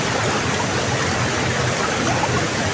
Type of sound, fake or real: real